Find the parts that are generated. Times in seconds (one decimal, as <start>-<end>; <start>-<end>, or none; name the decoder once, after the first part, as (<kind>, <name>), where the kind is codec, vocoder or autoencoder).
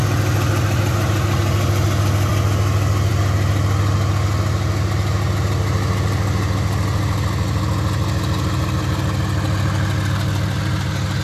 none